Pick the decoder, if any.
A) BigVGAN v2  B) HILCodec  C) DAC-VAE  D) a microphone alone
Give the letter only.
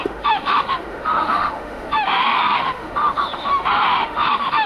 C